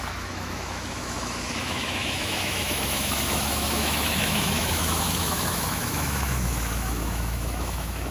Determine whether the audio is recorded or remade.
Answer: remade